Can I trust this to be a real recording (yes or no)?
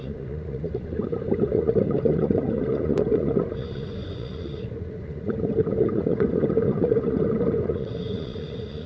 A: no